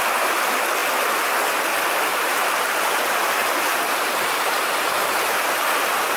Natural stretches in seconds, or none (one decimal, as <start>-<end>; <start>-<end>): 0.0-2.1; 3.0-3.4; 5.4-6.2